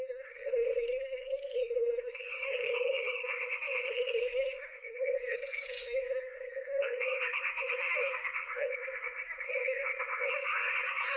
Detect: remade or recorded remade